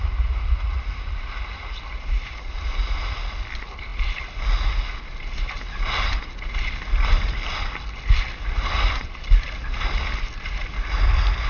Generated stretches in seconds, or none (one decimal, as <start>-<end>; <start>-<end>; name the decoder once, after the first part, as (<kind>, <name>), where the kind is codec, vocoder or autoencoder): none